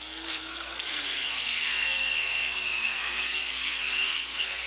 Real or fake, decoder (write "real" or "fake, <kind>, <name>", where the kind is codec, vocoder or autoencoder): fake, codec, SNAC